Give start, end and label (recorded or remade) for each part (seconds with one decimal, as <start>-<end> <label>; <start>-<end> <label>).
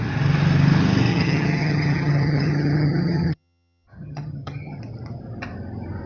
0.0-1.1 recorded; 1.1-4.8 remade; 4.8-6.1 recorded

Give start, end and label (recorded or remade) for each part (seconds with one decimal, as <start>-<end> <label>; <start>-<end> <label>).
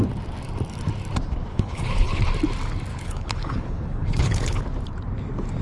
0.0-1.5 recorded; 1.5-2.2 remade; 2.2-2.9 recorded; 2.9-4.6 remade; 4.6-5.6 recorded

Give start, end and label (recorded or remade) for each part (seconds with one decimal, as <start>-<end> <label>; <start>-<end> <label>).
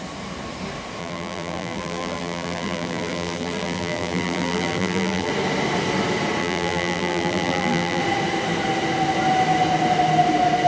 0.0-1.0 recorded; 1.0-5.3 remade; 5.3-6.4 recorded; 6.4-8.0 remade; 8.0-10.7 recorded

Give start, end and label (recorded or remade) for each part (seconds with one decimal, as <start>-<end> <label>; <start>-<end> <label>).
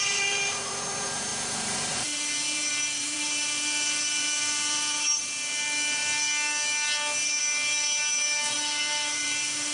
0.0-6.0 remade; 6.0-7.4 recorded; 7.4-9.7 remade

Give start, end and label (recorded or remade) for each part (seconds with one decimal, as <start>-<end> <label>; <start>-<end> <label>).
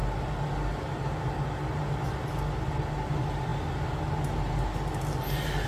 0.0-5.7 recorded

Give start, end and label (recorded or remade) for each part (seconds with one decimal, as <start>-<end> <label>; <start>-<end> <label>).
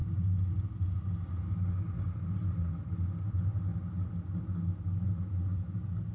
0.0-6.1 recorded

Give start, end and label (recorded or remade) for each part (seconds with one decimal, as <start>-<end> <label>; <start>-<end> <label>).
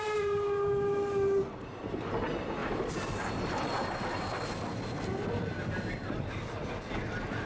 0.0-7.5 recorded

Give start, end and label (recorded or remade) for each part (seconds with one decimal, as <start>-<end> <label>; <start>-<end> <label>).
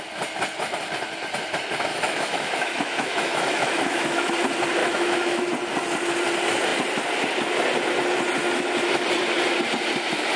0.0-1.9 recorded; 1.9-4.3 remade; 4.3-4.8 recorded; 4.8-5.4 remade; 5.4-10.4 recorded